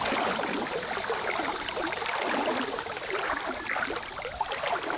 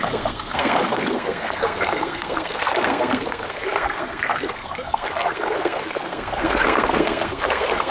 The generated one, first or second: second